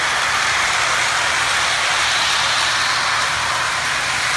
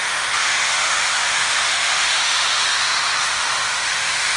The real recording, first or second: first